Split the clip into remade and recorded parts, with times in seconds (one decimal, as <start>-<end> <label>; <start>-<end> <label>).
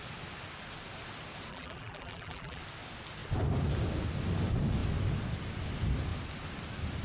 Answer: 0.0-1.5 recorded; 1.5-2.6 remade; 2.6-7.0 recorded